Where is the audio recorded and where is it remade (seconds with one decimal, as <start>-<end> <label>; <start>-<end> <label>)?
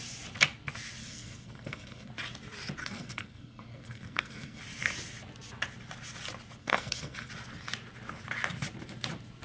0.0-1.0 recorded; 1.0-2.1 remade; 2.1-2.8 recorded; 2.8-4.6 remade; 4.6-6.6 recorded; 6.6-7.3 remade; 7.3-9.4 recorded